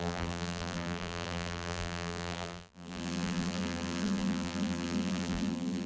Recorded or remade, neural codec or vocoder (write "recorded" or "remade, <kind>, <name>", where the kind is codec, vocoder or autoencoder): remade, vocoder, BigVGAN v2